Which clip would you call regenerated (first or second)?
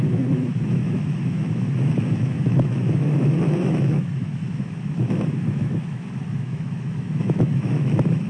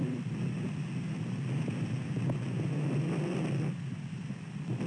first